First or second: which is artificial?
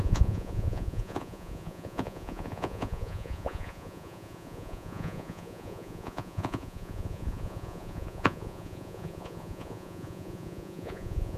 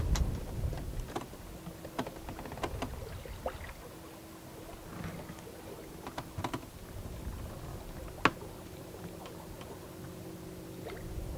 first